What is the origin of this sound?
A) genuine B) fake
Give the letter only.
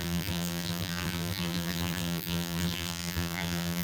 B